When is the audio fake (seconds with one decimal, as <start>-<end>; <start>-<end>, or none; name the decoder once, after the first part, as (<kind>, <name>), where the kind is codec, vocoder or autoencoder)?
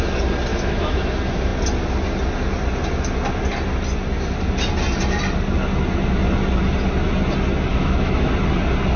0.5-1.0 (autoencoder, DAC-VAE); 7.7-8.3